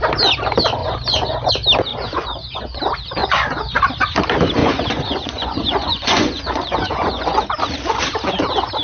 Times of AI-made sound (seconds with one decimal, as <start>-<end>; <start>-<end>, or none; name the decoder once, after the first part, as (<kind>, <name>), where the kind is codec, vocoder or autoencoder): 0.8-1.5 (vocoder, Vocos); 1.9-2.8; 3.2-3.8; 4.6-7.4